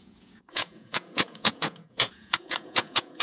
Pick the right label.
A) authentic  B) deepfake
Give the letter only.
B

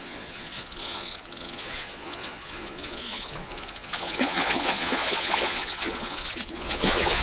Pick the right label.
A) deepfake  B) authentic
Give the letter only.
A